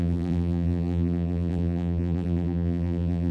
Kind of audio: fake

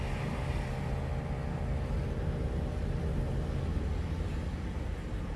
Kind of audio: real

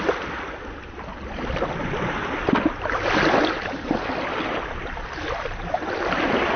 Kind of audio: real